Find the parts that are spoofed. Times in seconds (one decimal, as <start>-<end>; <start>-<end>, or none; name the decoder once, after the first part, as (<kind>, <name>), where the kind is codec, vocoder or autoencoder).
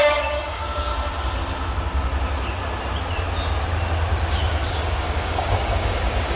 0.0-0.9 (codec, DAC); 4.7-6.4